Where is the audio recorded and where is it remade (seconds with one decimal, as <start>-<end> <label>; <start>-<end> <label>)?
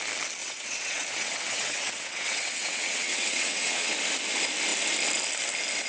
0.0-0.4 recorded; 0.4-3.9 remade; 3.9-5.9 recorded